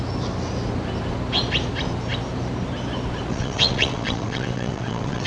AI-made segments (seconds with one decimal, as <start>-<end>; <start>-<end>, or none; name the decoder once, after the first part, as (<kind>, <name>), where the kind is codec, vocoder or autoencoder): 3.3-5.3 (vocoder, WaveNeXt)

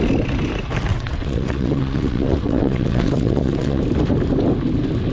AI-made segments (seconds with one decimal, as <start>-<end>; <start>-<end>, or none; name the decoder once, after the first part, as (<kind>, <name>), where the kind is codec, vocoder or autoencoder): 0.9-3.8 (vocoder, WaveNeXt)

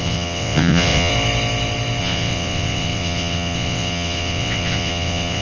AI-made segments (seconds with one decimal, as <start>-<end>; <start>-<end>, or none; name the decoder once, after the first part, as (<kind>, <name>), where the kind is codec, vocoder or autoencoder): 0.0-1.1 (vocoder, WaveNeXt); 2.0-5.4